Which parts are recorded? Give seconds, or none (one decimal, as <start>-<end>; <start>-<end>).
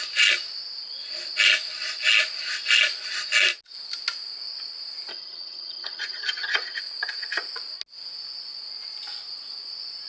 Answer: 0.0-5.1; 6.8-10.1